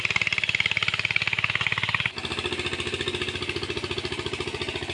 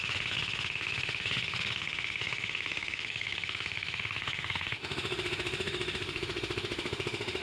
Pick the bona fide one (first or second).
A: first